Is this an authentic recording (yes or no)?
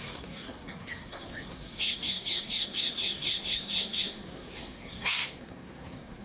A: no